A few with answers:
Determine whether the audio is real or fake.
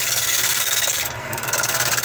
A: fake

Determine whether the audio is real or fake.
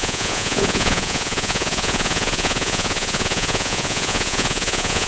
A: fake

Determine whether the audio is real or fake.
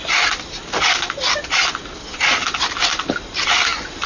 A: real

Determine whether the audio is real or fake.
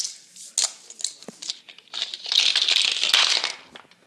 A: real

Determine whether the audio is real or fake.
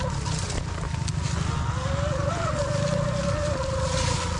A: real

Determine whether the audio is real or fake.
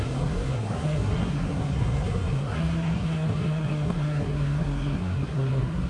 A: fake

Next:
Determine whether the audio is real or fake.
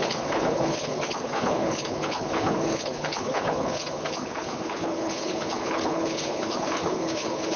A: fake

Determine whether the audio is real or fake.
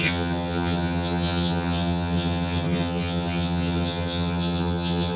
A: fake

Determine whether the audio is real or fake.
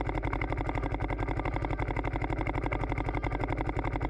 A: real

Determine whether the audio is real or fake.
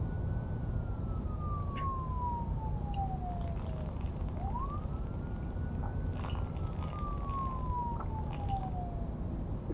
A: real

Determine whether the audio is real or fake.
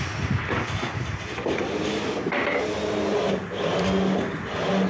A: real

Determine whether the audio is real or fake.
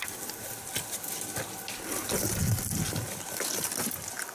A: real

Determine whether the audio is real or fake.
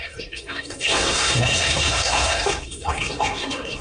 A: fake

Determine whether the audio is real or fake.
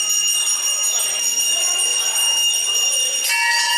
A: real